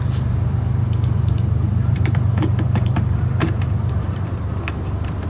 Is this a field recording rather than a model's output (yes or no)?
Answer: no